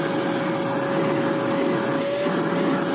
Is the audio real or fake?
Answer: real